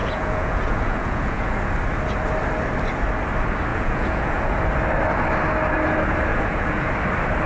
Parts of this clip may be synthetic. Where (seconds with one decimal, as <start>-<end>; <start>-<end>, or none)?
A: 0.0-1.7; 3.7-4.6; 6.3-6.9